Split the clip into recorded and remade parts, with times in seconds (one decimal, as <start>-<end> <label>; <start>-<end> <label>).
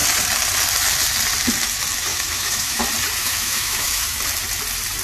0.0-2.1 recorded; 2.1-2.8 remade; 2.8-3.2 recorded; 3.2-4.2 remade; 4.2-5.0 recorded